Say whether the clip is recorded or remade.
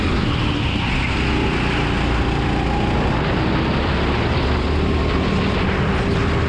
recorded